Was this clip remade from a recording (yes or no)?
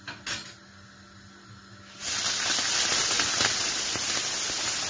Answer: no